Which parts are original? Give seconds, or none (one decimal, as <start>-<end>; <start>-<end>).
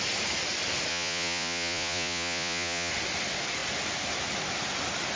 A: 0.0-0.9; 2.9-5.2